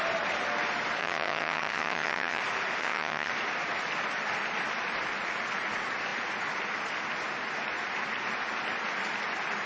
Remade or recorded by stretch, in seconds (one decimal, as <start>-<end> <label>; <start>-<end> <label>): 0.0-1.0 recorded; 1.0-2.4 remade; 2.4-2.8 recorded; 2.8-3.3 remade; 3.3-9.7 recorded